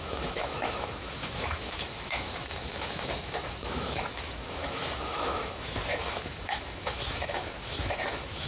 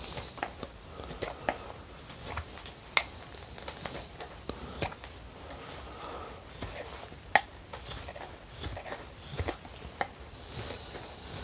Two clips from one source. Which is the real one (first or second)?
second